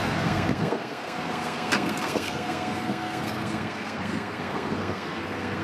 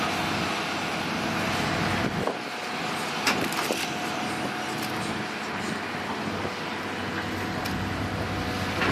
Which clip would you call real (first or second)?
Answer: second